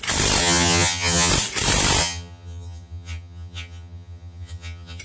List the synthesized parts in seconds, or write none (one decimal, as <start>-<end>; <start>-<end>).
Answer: 0.4-1.3; 2.0-5.0